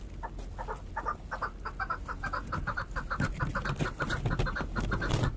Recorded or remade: recorded